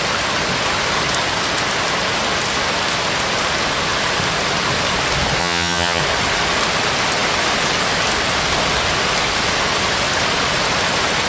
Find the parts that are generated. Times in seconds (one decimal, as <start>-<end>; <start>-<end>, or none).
5.4-6.0